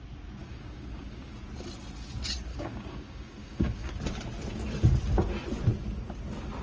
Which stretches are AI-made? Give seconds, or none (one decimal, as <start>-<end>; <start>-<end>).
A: 0.4-1.3; 2.5-3.9